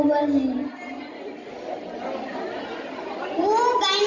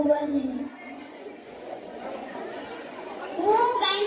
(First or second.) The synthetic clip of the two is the second